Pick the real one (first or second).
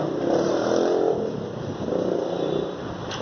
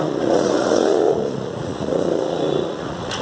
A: first